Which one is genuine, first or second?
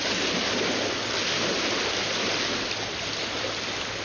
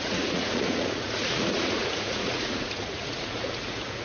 first